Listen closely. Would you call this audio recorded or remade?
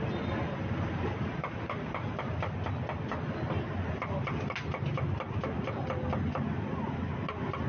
recorded